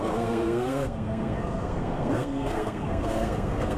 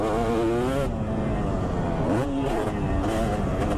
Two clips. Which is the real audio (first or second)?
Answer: second